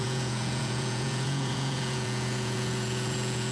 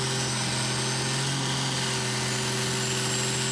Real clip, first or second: second